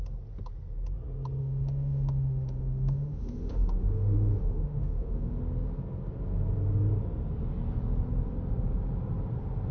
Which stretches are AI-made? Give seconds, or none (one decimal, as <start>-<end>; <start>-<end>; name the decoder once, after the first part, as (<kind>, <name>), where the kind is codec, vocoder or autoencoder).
1.4-5.4 (autoencoder, DAC-VAE)